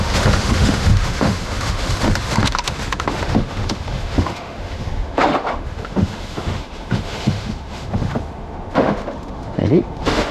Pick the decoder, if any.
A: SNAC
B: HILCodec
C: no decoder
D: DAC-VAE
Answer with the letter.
D